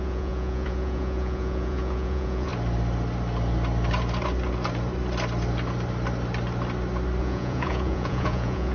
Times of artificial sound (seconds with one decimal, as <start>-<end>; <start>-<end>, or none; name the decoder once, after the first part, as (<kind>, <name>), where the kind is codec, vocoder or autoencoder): 0.0-2.5 (vocoder, Vocos); 7.2-8.7